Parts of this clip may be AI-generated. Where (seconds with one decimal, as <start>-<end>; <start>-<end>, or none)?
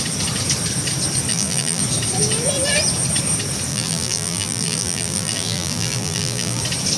1.3-1.8; 3.7-6.6